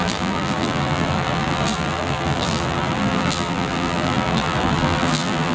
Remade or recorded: remade